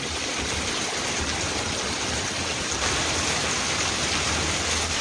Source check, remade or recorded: recorded